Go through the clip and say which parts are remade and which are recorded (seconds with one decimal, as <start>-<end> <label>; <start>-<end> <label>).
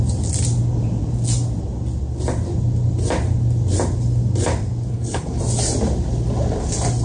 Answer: 0.0-4.9 recorded; 4.9-5.4 remade; 5.4-7.0 recorded